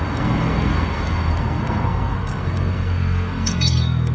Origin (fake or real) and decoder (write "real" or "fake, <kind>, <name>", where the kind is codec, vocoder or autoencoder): fake, codec, SNAC